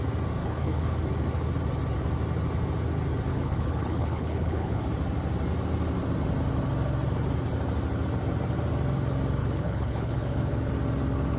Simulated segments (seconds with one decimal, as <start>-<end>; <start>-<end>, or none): 0.4-1.0; 3.3-4.8; 9.4-10.7